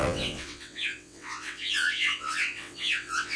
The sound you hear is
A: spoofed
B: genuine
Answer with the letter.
A